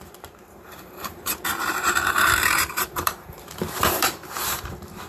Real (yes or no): no